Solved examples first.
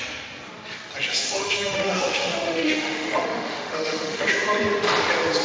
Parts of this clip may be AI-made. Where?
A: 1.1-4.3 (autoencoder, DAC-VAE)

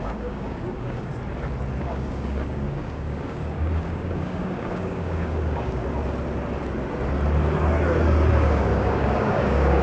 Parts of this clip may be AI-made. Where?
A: 0.0-1.1 (codec, DAC); 1.8-5.8; 8.3-9.8

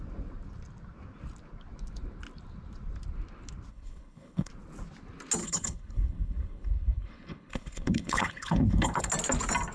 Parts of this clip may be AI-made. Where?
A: 3.7-4.5 (codec, HILCodec); 5.4-9.1

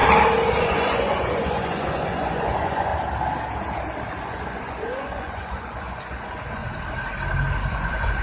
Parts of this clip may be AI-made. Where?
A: 0.6-2.9 (vocoder, Vocos); 4.1-6.6; 7.7-8.2

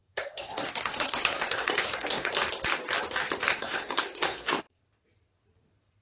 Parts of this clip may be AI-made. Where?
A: 0.0-2.3 (codec, SNAC); 3.5-4.8